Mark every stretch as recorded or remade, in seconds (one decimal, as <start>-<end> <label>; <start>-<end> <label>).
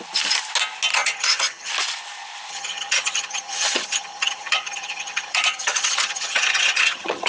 0.0-0.9 recorded; 0.9-1.7 remade; 1.7-2.5 recorded; 2.5-7.3 remade